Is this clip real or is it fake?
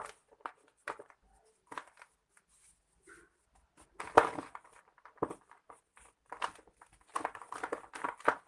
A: real